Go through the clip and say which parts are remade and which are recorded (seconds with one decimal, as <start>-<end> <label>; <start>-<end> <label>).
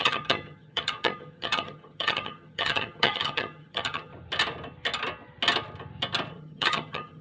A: 0.0-4.1 remade; 4.1-6.3 recorded; 6.3-7.2 remade